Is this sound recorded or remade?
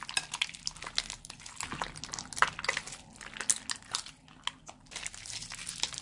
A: recorded